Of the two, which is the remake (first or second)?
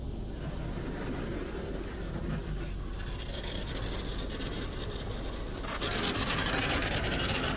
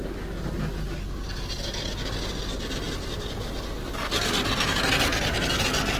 first